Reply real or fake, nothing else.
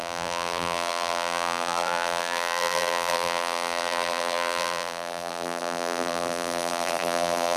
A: fake